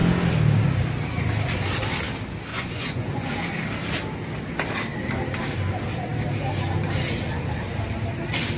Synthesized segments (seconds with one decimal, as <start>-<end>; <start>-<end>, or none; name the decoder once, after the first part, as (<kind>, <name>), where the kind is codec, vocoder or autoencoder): 2.5-3.3 (vocoder, Vocos)